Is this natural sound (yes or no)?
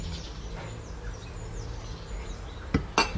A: yes